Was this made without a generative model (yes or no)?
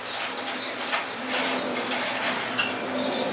yes